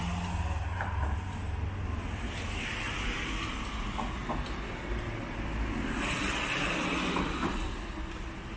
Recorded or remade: recorded